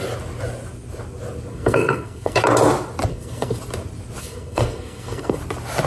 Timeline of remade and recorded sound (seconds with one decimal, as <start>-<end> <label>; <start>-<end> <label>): 0.0-1.5 recorded; 1.5-2.4 remade; 2.4-3.1 recorded; 3.1-3.6 remade; 3.6-4.2 recorded; 4.2-5.4 remade; 5.4-5.9 recorded